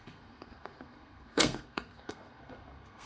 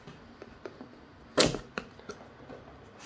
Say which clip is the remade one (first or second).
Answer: first